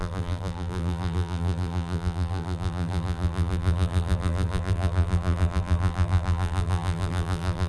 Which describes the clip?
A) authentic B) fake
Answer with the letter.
B